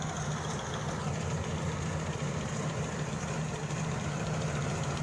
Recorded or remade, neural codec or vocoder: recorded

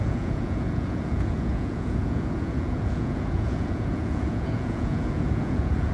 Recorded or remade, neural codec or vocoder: remade, vocoder, Vocos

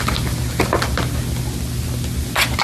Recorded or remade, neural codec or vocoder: recorded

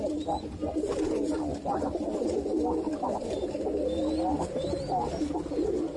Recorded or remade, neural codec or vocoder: recorded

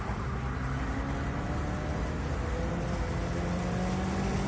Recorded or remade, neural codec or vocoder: recorded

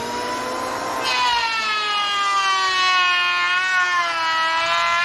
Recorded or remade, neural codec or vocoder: recorded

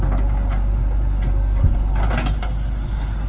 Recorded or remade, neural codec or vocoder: recorded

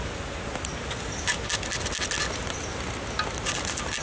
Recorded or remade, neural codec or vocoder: recorded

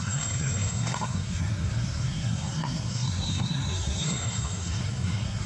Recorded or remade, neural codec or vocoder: remade, codec, SNAC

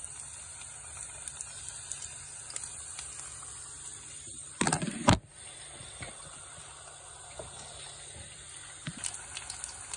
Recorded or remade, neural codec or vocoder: recorded